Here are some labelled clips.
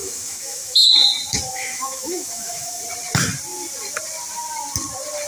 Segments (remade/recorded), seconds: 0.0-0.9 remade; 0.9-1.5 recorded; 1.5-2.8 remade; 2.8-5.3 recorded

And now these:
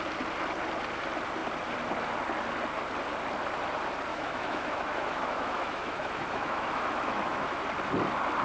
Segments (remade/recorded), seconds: 0.0-4.1 recorded; 4.1-7.6 remade; 7.6-8.4 recorded

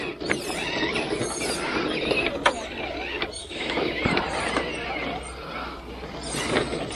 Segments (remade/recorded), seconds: 0.0-3.4 recorded; 3.4-4.0 remade; 4.0-7.0 recorded